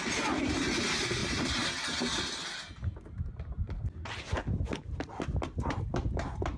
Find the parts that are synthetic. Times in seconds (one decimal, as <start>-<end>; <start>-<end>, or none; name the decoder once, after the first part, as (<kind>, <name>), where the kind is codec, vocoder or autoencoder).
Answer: none